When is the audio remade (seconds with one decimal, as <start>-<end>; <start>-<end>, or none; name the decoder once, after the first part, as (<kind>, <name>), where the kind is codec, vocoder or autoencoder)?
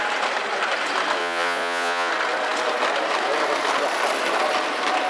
1.2-2.1 (vocoder, Vocos)